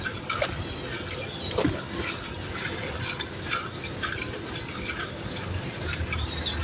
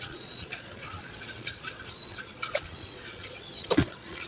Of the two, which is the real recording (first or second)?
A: first